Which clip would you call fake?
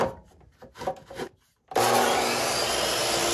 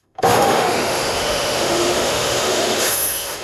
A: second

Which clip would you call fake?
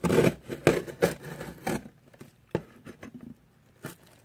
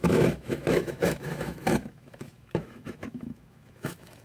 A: second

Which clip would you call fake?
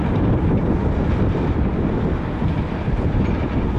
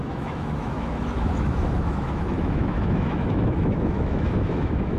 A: second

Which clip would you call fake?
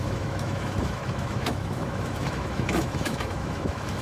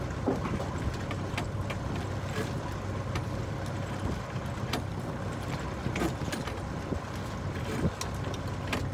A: first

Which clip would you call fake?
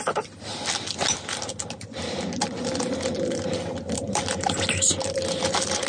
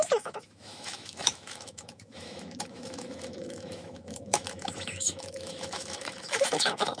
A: second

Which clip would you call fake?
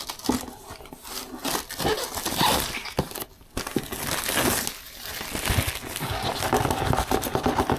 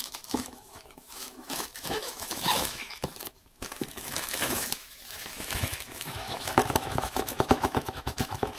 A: second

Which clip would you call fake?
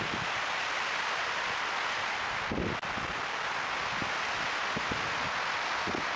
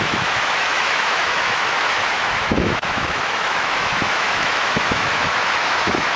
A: second